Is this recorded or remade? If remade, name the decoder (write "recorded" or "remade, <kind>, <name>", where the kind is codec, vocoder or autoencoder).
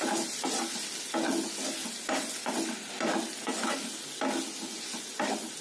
recorded